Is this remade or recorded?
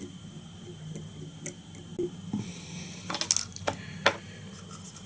recorded